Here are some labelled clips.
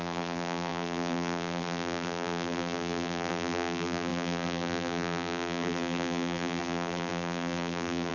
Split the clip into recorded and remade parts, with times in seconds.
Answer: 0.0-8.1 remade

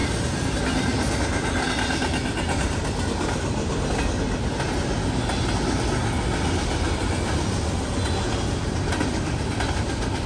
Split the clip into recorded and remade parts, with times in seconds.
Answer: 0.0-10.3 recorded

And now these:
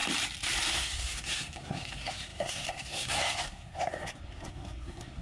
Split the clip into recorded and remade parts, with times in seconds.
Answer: 0.0-0.7 recorded; 0.7-5.2 remade

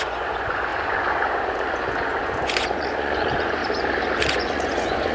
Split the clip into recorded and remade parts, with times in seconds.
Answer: 0.0-3.6 remade; 3.6-4.3 recorded; 4.3-5.1 remade